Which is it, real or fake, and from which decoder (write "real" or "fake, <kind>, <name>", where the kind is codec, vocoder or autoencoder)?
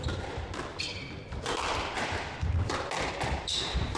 fake, vocoder, BigVGAN v2